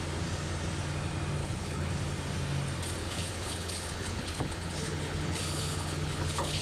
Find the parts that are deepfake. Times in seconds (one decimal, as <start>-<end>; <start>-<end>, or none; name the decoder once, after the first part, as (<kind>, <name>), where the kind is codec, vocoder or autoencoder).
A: 1.4-1.9 (codec, HILCodec); 3.0-6.6